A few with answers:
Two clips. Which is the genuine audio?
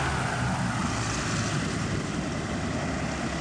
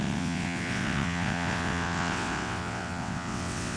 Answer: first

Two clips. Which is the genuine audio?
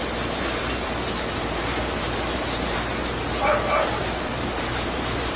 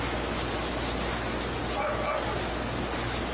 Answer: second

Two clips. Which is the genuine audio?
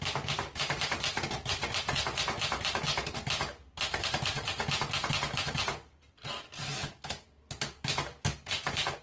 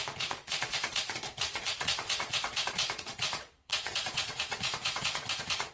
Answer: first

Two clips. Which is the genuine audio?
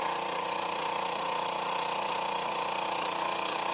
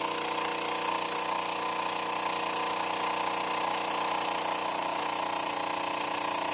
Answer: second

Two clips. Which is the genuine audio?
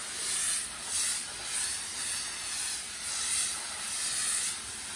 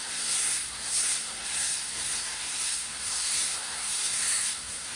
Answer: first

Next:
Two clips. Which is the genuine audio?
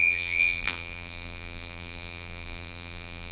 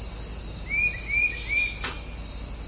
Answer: second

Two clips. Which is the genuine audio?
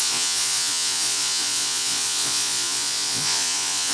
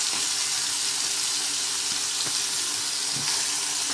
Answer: second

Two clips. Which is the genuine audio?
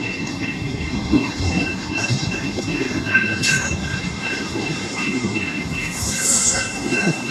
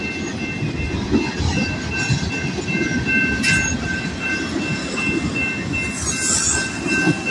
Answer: second